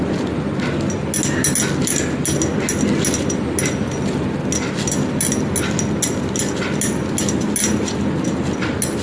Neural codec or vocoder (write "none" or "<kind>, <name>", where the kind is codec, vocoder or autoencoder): none